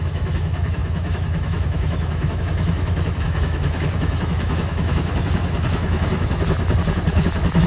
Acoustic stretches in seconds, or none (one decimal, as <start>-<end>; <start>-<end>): 6.1-7.1